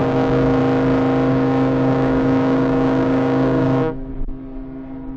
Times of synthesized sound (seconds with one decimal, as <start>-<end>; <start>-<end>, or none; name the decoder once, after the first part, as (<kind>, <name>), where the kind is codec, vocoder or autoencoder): 0.0-0.6 (codec, DAC); 1.3-4.1